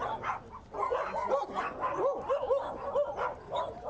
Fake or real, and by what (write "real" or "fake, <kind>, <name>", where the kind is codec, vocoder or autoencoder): real